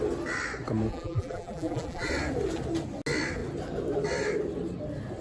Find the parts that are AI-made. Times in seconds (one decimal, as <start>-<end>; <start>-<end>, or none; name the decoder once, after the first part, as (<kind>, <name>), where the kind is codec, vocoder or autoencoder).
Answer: 0.9-2.1 (vocoder, BigVGAN v2)